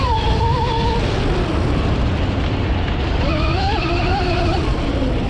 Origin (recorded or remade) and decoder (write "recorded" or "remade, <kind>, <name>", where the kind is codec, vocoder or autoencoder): remade, vocoder, BigVGAN v2